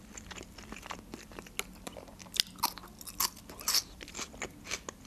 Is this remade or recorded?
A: recorded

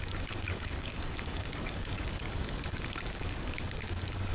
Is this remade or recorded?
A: remade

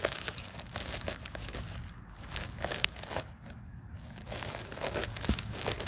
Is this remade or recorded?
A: remade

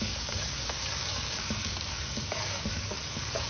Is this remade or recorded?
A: remade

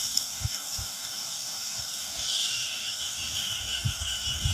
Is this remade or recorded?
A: remade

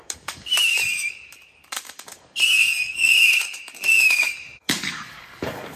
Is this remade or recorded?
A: remade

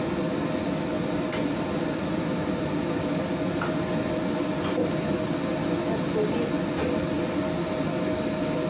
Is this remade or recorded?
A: recorded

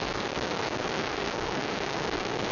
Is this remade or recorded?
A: remade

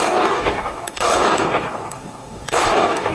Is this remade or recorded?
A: remade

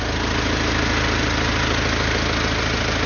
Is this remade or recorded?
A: recorded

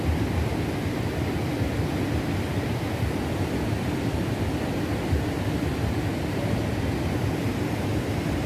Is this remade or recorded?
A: recorded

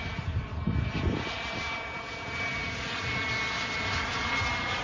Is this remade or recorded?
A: recorded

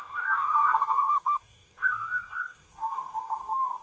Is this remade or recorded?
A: remade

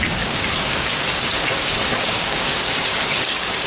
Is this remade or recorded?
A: remade